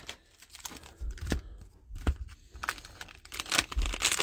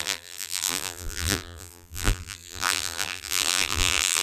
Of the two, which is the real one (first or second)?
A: first